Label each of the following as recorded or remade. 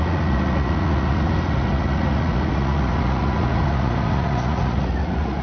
remade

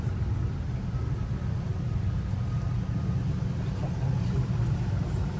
recorded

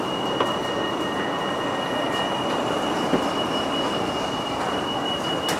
recorded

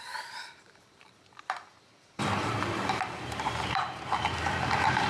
remade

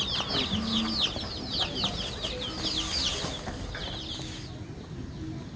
recorded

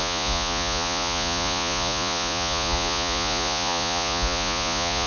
remade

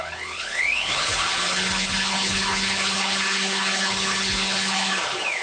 remade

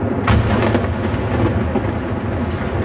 recorded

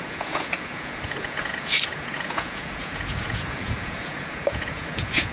remade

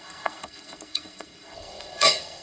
remade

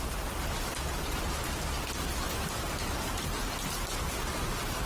recorded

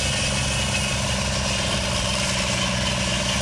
recorded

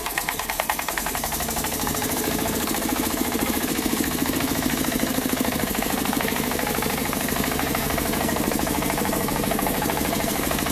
remade